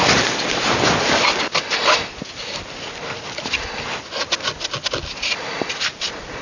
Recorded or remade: recorded